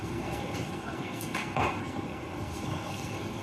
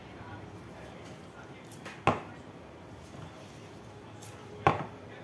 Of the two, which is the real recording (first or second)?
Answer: second